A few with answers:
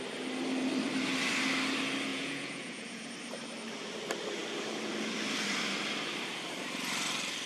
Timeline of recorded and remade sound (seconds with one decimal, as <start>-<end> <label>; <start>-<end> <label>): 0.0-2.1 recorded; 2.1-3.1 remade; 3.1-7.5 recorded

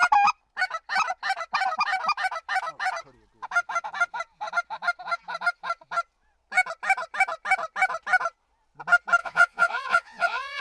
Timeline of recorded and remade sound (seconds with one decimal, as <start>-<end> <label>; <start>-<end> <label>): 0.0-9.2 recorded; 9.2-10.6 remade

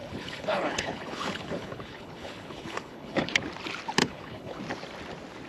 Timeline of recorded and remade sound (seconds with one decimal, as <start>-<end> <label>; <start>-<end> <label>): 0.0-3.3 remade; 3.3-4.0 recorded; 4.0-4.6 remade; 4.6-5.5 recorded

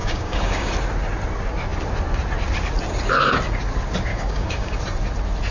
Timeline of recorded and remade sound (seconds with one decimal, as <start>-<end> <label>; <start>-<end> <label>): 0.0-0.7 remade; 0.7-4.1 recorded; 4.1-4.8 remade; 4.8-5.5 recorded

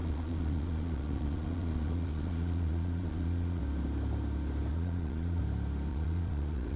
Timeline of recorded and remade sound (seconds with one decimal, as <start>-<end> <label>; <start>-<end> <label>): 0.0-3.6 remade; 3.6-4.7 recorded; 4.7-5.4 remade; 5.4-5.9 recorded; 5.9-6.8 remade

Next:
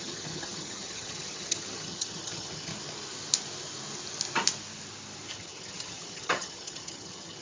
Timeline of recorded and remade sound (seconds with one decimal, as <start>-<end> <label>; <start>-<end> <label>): 0.0-2.7 remade; 2.7-5.3 recorded; 5.3-7.4 remade

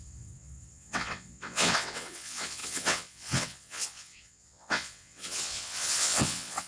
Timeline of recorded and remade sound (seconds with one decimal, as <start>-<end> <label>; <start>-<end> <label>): 0.0-6.7 remade